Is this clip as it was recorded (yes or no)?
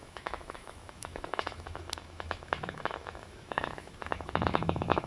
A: no